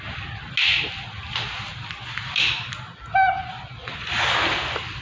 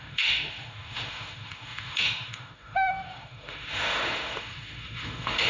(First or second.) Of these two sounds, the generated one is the second